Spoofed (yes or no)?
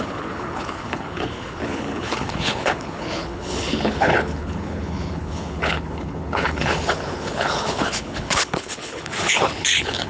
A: yes